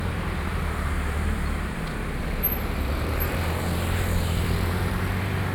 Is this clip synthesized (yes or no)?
yes